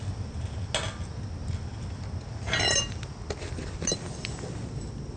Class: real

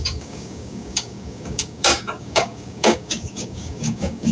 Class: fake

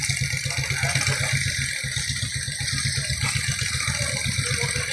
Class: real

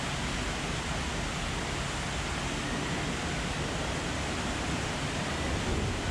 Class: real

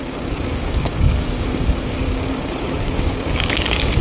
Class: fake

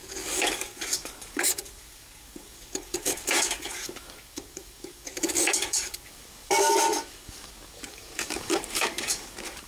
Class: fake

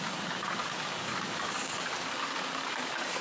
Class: fake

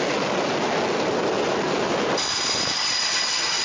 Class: real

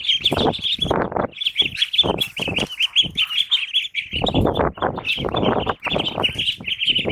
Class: real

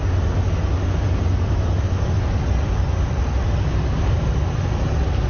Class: real